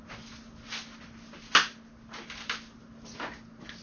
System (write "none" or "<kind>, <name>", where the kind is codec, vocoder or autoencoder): none